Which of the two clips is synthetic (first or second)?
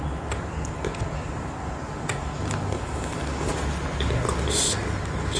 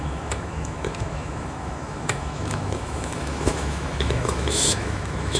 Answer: second